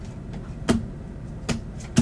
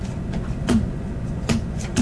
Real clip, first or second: first